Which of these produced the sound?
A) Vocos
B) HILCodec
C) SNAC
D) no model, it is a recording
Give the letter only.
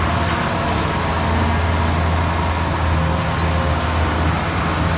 D